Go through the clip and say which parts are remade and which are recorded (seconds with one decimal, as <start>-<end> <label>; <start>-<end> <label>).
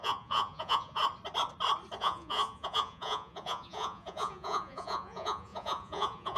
0.0-1.0 remade; 1.0-2.0 recorded; 2.0-6.4 remade